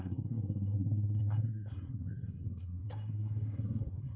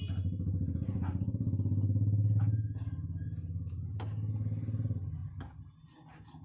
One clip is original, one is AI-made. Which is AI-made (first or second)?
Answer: first